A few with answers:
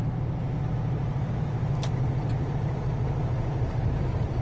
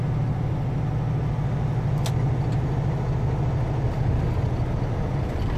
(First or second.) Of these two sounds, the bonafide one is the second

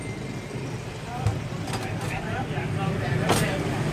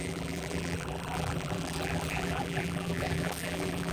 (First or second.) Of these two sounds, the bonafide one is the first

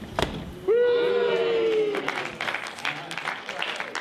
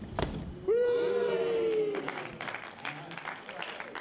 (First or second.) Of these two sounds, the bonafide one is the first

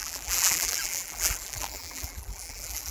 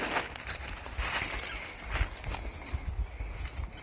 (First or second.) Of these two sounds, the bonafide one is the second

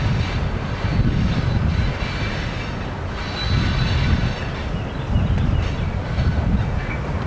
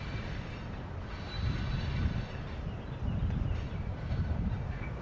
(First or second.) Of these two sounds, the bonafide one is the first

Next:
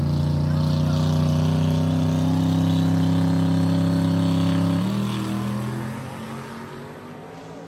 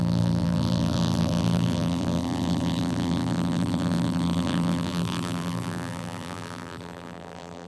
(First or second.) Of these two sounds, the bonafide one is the first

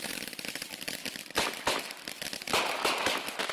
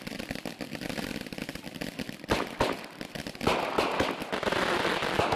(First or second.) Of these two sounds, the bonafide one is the second